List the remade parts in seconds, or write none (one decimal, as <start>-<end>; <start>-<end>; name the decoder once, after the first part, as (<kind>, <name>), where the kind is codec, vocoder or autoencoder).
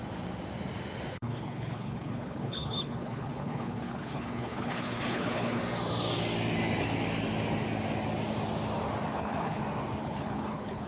1.1-5.6 (codec, HILCodec); 9.1-9.6; 10.0-10.9